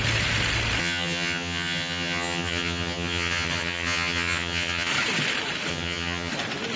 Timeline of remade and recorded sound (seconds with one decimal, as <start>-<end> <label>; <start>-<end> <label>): 0.0-0.8 recorded; 0.8-4.9 remade; 4.9-5.7 recorded; 5.7-6.3 remade; 6.3-6.8 recorded